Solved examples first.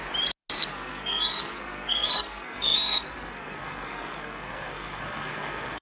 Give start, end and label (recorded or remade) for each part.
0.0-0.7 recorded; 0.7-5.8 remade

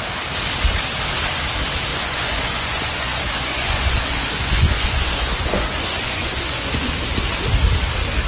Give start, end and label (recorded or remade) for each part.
0.0-1.9 recorded; 1.9-6.9 remade; 6.9-8.3 recorded

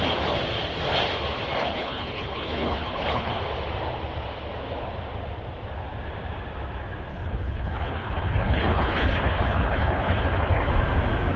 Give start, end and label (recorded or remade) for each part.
0.0-1.6 recorded; 1.6-3.4 remade; 3.4-7.1 recorded; 7.1-10.7 remade; 10.7-11.4 recorded

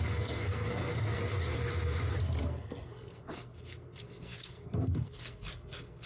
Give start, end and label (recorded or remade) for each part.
0.0-1.2 remade; 1.2-2.4 recorded; 2.4-6.1 remade

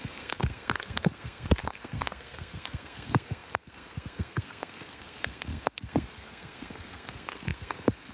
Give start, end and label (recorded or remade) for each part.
0.0-8.1 remade

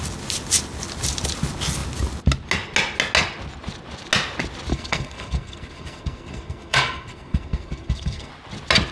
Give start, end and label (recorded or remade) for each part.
0.0-4.7 recorded; 4.7-8.3 remade; 8.3-8.9 recorded

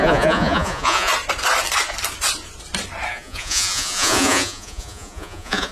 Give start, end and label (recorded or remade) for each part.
0.0-1.1 remade; 1.1-3.1 recorded; 3.1-5.7 remade

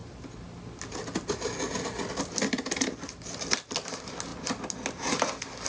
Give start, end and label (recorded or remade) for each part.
0.0-5.7 recorded